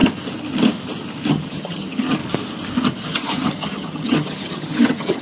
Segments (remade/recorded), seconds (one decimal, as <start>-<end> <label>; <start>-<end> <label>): 0.0-1.3 recorded; 1.3-2.2 remade; 2.2-3.0 recorded; 3.0-5.2 remade